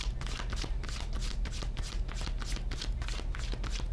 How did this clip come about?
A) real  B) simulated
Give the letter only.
A